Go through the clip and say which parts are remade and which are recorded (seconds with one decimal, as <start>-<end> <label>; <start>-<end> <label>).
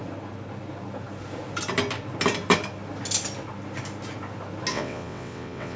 0.0-4.7 recorded; 4.7-5.8 remade